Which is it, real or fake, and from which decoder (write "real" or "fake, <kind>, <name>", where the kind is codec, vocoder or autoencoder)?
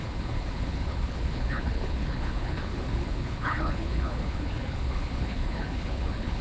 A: fake, codec, HILCodec